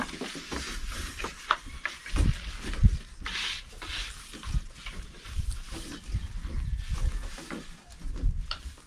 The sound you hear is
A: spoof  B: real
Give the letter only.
B